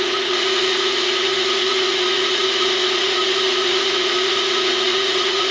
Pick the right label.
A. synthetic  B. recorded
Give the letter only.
A